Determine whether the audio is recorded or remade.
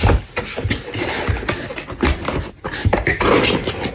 recorded